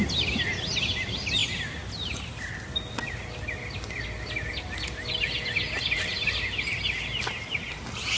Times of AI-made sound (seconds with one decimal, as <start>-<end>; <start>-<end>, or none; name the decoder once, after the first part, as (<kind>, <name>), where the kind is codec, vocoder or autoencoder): none